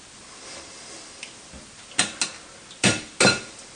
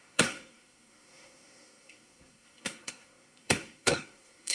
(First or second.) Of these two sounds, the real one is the first